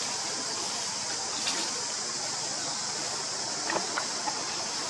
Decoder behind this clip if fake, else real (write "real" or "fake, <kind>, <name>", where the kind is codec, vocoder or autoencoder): real